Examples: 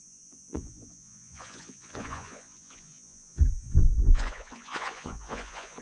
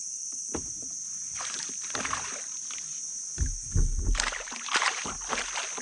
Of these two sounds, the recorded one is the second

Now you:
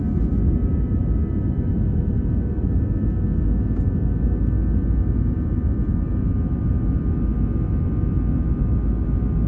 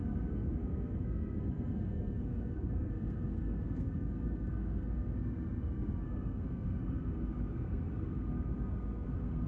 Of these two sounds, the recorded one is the first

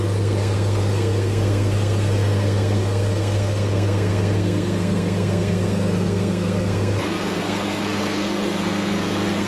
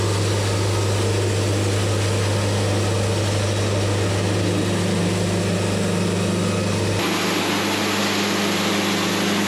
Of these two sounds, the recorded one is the second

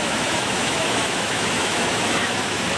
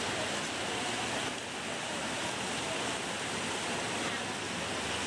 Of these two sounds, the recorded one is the second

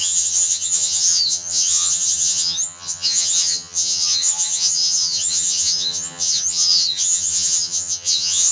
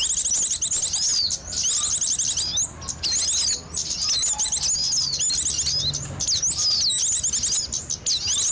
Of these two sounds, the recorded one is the second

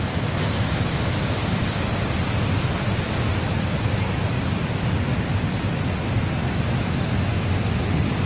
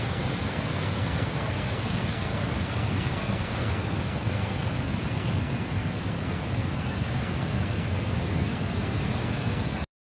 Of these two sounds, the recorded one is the first